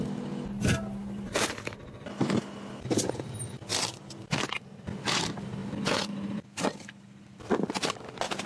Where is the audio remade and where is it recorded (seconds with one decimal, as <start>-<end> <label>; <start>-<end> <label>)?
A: 0.0-3.7 recorded; 3.7-4.4 remade; 4.4-8.5 recorded